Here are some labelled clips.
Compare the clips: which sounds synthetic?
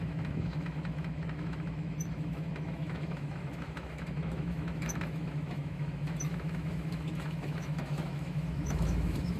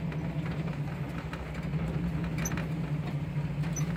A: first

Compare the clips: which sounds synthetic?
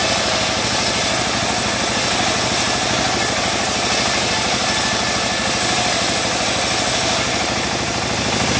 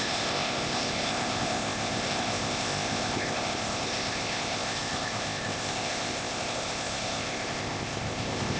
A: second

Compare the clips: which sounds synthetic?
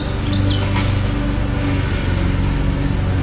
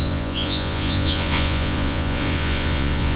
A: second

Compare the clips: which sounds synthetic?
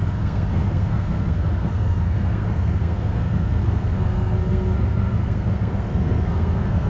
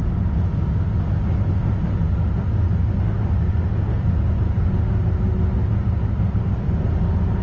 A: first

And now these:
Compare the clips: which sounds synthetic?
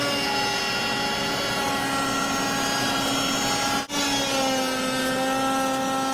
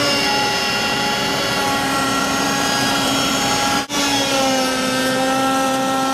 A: second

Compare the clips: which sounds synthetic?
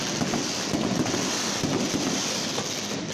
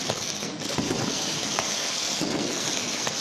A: second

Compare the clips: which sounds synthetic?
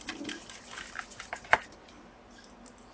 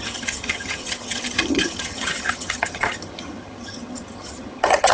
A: second